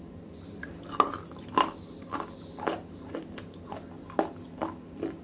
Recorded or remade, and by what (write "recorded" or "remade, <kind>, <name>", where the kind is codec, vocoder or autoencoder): recorded